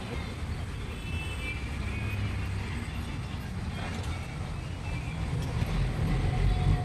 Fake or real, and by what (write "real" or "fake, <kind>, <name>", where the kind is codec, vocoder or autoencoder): real